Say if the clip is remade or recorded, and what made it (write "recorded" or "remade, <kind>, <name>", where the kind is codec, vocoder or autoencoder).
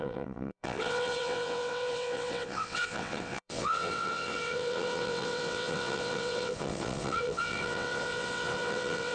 remade, vocoder, WaveNeXt